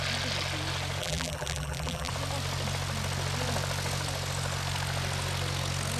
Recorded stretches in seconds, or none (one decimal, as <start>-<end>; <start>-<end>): 0.0-1.0; 2.1-6.0